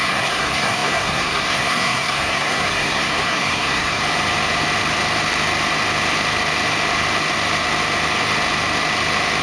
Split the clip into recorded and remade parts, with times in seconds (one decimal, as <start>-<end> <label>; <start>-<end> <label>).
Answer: 0.0-4.0 remade; 4.0-9.4 recorded